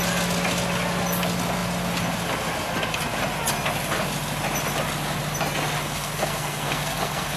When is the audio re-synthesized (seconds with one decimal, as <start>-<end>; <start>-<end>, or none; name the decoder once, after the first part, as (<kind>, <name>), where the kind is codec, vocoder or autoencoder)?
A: 5.8-7.4 (codec, SNAC)

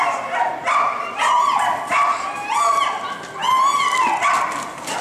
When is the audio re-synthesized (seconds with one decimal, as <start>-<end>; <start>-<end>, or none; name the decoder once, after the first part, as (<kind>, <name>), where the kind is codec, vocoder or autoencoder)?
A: none

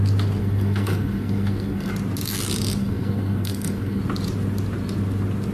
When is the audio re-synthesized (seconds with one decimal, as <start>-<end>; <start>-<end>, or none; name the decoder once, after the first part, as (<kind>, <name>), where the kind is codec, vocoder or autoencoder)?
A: 0.4-1.9 (codec, SNAC); 2.8-4.0

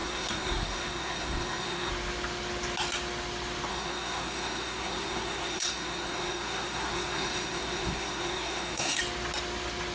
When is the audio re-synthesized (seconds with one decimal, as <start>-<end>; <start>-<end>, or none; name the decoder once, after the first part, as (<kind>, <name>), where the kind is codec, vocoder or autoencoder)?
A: 0.0-1.9 (codec, SNAC); 3.7-9.0